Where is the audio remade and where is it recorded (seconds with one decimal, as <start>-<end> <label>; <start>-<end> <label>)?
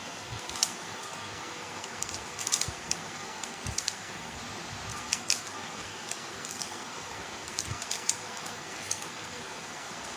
0.0-4.4 remade; 4.4-4.9 recorded; 4.9-10.2 remade